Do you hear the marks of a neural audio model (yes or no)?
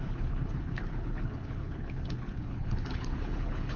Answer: yes